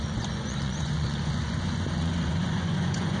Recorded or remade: remade